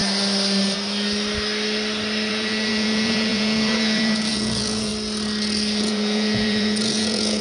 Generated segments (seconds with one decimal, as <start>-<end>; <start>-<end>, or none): 2.3-4.9; 5.8-7.4